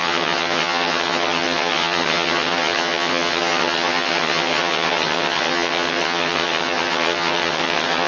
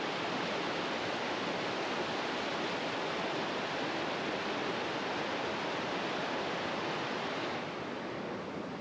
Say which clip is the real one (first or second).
second